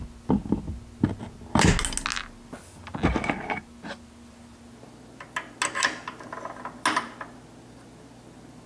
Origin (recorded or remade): recorded